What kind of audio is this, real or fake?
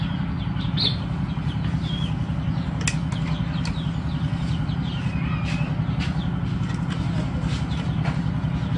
real